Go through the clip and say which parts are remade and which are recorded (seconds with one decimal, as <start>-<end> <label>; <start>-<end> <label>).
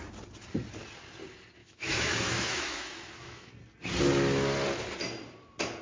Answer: 0.0-1.6 recorded; 1.6-3.5 remade; 3.5-5.8 recorded